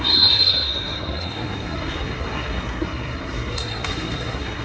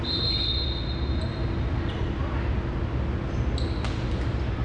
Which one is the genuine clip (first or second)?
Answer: second